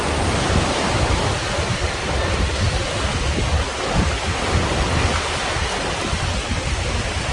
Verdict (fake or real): real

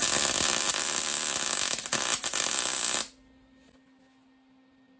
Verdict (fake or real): real